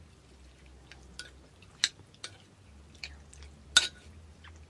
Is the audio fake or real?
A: real